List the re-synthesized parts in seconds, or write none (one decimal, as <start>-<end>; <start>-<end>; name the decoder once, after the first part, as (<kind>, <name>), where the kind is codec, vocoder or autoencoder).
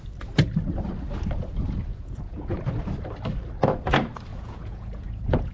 1.9-2.6 (vocoder, Vocos); 4.3-5.5